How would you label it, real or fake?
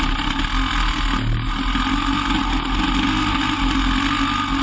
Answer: real